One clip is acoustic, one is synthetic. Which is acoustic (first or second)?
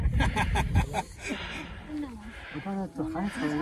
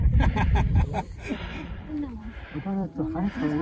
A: first